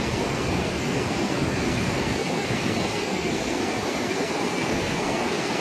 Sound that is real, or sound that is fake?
fake